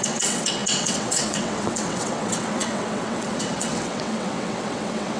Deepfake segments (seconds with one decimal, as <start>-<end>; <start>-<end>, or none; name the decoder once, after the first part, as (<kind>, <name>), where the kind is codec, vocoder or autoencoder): 0.0-5.2 (vocoder, WaveNeXt)